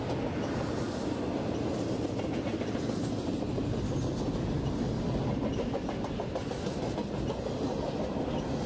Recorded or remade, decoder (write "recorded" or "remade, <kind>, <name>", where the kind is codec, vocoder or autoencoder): recorded